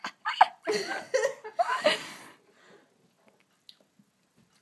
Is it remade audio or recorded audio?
recorded